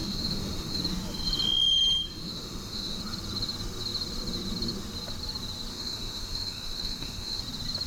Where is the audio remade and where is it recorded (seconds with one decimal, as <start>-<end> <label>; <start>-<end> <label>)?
0.0-0.8 remade; 0.8-2.2 recorded; 2.2-3.0 remade; 3.0-5.7 recorded; 5.7-7.4 remade; 7.4-7.9 recorded